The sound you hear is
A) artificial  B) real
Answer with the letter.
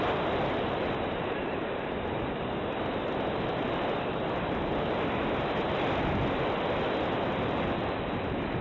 B